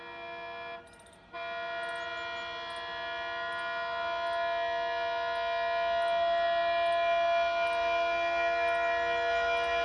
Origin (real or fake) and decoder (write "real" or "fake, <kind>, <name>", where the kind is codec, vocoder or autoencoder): real